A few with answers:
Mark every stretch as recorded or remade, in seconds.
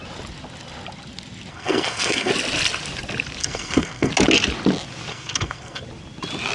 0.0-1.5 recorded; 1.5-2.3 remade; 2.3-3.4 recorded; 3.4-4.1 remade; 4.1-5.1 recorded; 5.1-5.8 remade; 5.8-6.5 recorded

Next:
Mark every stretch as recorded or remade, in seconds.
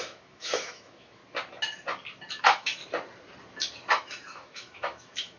0.0-1.2 remade; 1.2-2.4 recorded; 2.4-2.8 remade; 2.8-3.9 recorded; 3.9-5.4 remade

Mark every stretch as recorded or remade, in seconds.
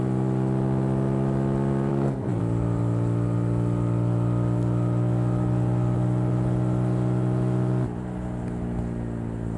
0.0-1.9 recorded; 1.9-2.4 remade; 2.4-9.6 recorded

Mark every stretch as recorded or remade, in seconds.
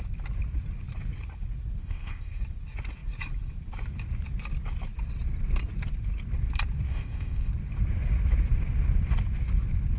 0.0-1.8 recorded; 1.8-2.4 remade; 2.4-6.9 recorded; 6.9-7.5 remade; 7.5-10.0 recorded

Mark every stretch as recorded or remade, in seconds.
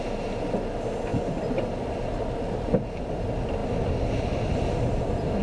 0.0-5.4 recorded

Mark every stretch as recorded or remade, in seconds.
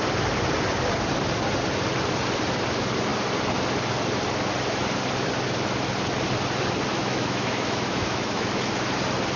0.0-6.9 recorded; 6.9-8.7 remade; 8.7-9.4 recorded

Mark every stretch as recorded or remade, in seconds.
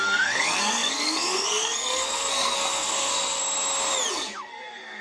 0.0-3.4 remade; 3.4-4.1 recorded; 4.1-5.0 remade